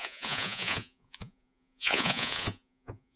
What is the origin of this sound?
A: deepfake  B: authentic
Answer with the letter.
A